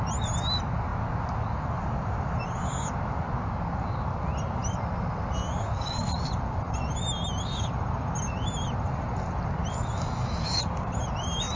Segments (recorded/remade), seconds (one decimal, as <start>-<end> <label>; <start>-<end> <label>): 0.0-11.6 recorded